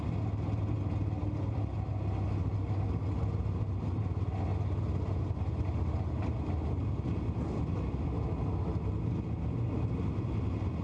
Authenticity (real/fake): real